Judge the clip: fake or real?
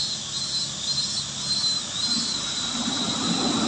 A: real